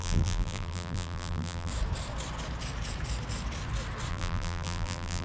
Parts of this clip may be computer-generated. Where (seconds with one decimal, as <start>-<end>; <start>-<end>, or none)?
0.0-1.7; 4.1-5.2